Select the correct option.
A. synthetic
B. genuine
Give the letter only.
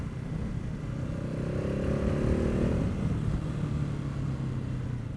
B